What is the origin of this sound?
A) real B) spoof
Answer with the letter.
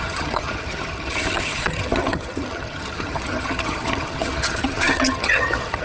B